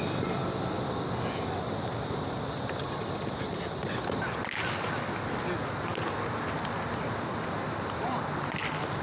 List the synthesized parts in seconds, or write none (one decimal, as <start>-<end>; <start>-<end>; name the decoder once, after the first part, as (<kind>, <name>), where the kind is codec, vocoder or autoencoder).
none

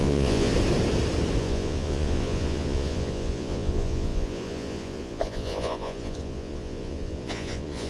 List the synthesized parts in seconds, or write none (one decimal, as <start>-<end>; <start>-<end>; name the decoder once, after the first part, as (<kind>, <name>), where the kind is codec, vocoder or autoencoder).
0.0-0.5 (vocoder, Vocos); 1.4-7.9

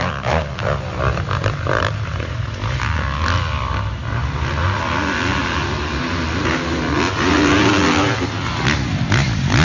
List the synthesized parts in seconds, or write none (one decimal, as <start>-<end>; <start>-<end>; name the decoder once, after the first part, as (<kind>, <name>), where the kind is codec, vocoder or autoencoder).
none

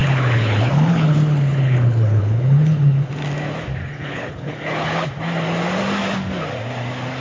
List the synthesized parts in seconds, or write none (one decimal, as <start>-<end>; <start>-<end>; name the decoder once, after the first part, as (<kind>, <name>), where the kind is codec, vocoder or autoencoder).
0.0-3.1 (codec, HILCodec); 3.8-5.1